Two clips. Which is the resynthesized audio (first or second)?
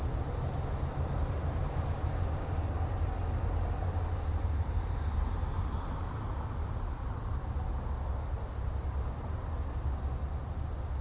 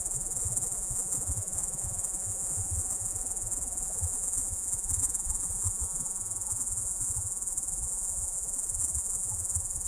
second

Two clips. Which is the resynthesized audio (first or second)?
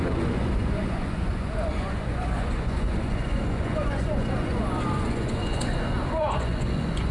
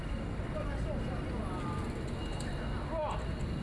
first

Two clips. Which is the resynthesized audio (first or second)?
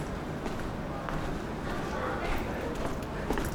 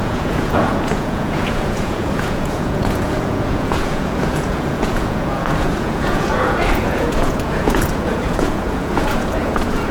second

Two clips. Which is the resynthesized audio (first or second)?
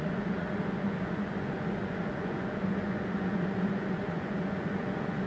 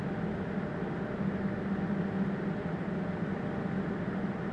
first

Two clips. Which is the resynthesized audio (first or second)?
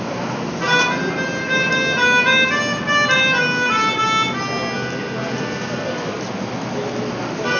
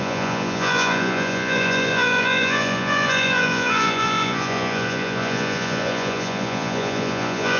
second